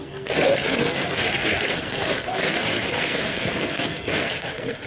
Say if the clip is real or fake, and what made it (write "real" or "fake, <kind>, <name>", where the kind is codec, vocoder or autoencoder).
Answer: fake, codec, SNAC